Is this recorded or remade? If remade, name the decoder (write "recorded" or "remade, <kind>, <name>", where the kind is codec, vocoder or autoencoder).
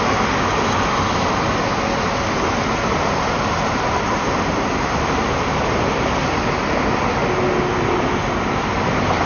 recorded